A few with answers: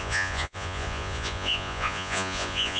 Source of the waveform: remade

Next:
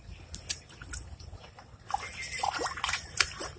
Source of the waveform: recorded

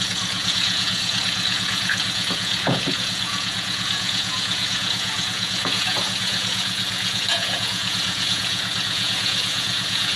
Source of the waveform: remade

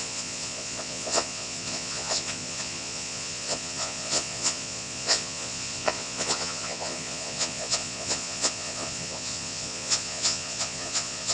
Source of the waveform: remade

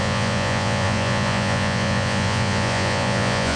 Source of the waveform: remade